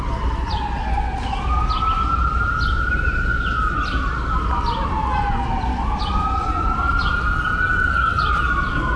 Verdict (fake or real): real